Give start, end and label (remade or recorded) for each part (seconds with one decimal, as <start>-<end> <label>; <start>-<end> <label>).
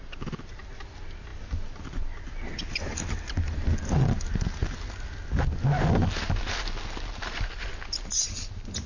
0.0-8.9 recorded